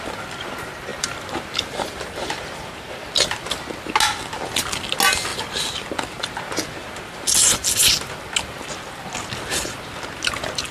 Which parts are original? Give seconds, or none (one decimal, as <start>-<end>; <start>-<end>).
0.0-0.9; 3.0-5.3; 5.9-10.7